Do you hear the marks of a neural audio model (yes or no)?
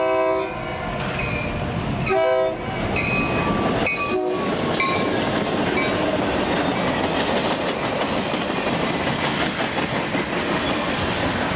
no